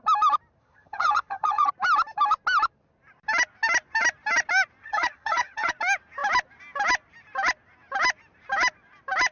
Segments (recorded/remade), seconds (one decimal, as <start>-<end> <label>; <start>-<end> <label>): 0.0-0.6 recorded; 0.6-1.7 remade; 1.7-4.8 recorded; 4.8-5.7 remade; 5.7-9.3 recorded